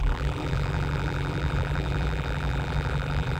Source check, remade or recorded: remade